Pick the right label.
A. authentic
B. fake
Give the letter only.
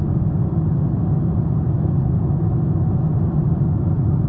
A